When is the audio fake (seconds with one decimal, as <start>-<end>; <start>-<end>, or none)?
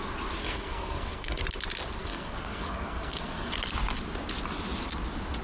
0.4-1.4; 2.0-3.5